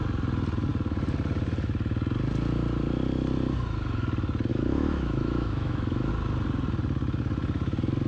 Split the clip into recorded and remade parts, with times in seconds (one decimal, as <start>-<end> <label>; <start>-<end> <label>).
0.0-4.5 recorded; 4.5-6.1 remade; 6.1-8.1 recorded